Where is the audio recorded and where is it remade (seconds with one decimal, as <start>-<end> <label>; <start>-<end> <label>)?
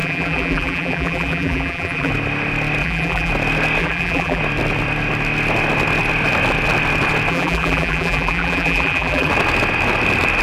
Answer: 0.0-2.1 remade; 2.1-2.8 recorded; 2.8-3.3 remade; 3.3-3.8 recorded; 3.8-4.4 remade; 4.4-7.3 recorded; 7.3-9.3 remade; 9.3-10.4 recorded